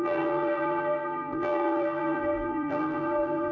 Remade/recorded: remade